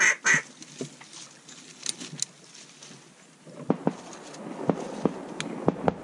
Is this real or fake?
real